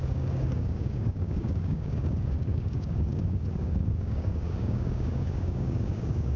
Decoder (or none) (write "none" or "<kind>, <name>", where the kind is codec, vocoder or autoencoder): codec, DAC